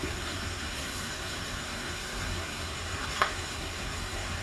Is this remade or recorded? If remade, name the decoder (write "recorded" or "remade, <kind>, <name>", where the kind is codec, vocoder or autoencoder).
remade, codec, SNAC